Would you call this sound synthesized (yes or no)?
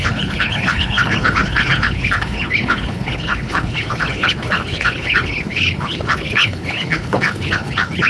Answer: yes